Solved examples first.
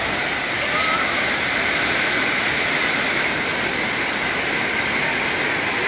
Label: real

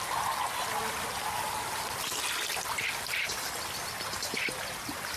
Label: real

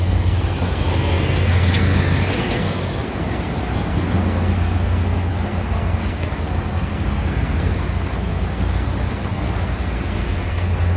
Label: fake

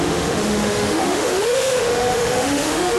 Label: fake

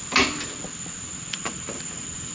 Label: real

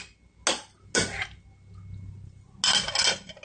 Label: real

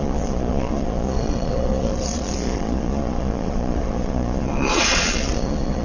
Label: fake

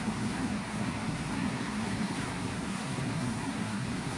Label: fake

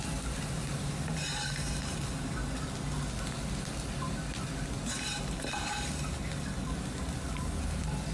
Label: real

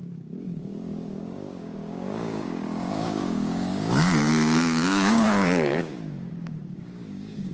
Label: fake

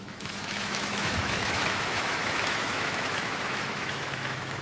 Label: fake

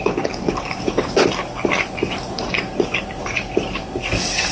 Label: fake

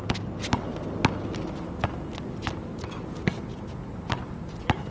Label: real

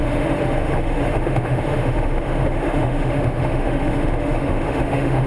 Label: fake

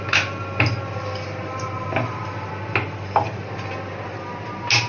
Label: real